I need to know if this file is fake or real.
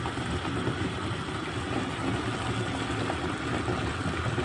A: real